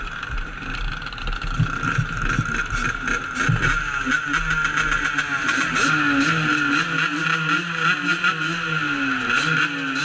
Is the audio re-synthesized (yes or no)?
no